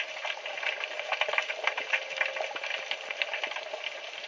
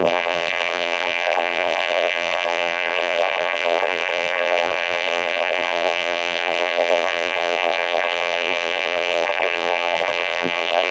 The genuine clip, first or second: first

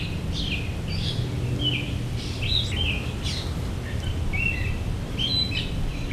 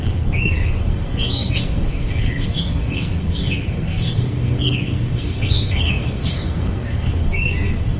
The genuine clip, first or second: first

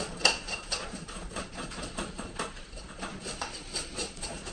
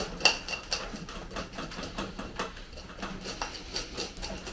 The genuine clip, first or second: second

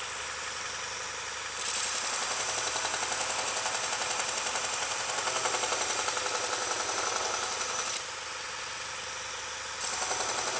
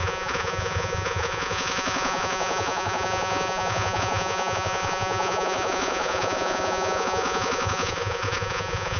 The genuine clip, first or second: first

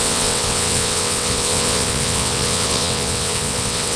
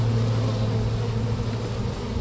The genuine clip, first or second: second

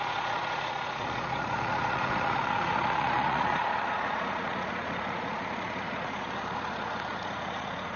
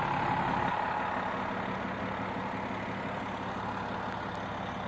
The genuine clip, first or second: second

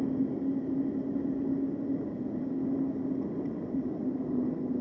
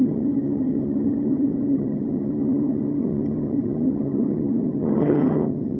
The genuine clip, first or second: first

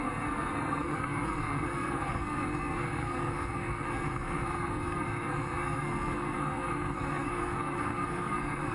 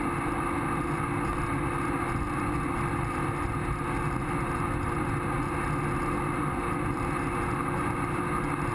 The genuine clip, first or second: second